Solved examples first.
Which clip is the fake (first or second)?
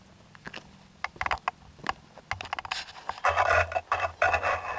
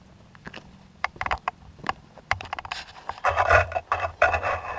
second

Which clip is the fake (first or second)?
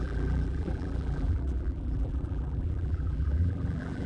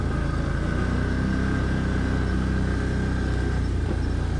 first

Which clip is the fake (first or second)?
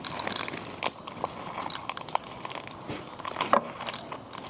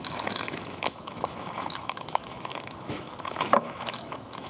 second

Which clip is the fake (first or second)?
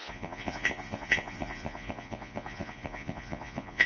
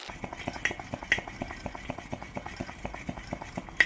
first